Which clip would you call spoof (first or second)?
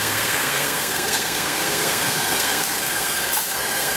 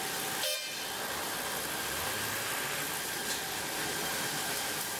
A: first